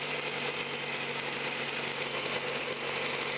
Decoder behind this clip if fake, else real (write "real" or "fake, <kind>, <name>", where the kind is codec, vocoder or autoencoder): real